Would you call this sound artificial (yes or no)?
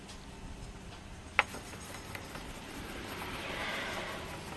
no